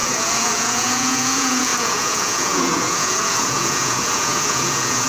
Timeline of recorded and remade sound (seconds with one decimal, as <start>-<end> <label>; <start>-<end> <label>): 0.0-5.1 remade